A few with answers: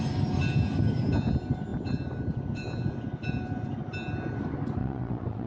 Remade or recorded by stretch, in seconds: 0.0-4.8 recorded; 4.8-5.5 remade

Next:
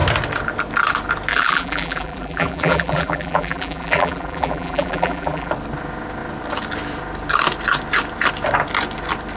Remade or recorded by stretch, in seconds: 0.0-1.3 recorded; 1.3-5.5 remade; 5.5-9.4 recorded

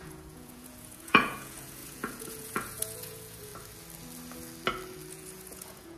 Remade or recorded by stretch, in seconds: 0.0-3.5 remade; 3.5-5.1 recorded; 5.1-6.0 remade